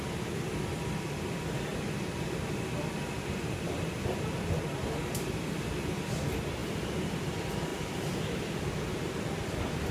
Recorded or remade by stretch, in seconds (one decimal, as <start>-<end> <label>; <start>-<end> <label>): 0.0-1.7 remade; 1.7-3.9 recorded; 3.9-9.9 remade